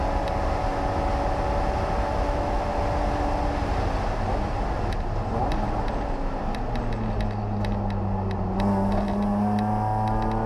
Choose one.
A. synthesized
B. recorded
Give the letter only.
B